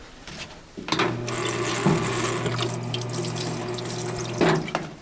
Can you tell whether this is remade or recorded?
recorded